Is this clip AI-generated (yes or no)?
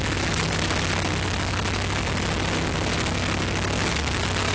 no